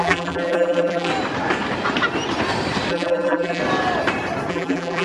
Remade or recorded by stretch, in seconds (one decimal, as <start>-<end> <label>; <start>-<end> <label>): 0.0-1.1 remade; 1.1-2.9 recorded; 2.9-3.6 remade; 3.6-4.5 recorded; 4.5-5.0 remade